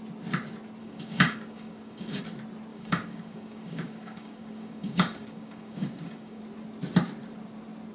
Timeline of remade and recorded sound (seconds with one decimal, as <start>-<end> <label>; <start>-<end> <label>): 0.0-0.8 recorded; 0.8-2.2 remade; 2.2-2.7 recorded; 2.7-6.4 remade; 6.4-7.9 recorded